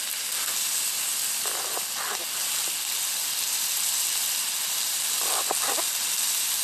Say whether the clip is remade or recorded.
recorded